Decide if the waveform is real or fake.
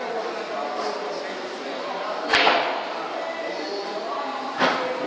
real